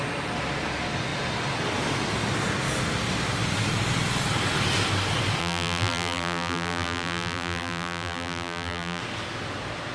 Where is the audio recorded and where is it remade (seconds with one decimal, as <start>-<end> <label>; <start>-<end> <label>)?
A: 0.0-5.4 recorded; 5.4-9.0 remade; 9.0-9.9 recorded